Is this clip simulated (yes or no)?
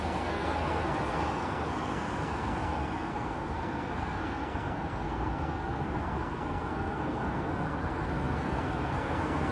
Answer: yes